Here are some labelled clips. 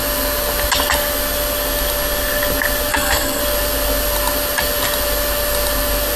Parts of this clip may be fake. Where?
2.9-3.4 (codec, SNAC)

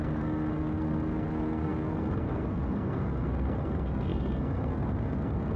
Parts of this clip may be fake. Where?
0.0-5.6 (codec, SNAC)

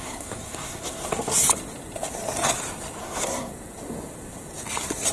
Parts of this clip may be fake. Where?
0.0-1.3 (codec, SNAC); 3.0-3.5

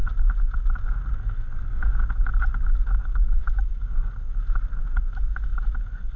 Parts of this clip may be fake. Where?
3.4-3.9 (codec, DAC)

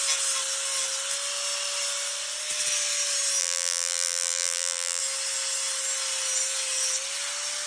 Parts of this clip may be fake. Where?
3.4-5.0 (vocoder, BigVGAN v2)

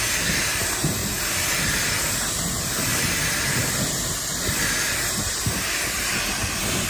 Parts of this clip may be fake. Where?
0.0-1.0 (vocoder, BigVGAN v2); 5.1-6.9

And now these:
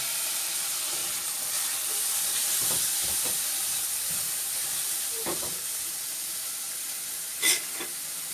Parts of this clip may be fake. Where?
none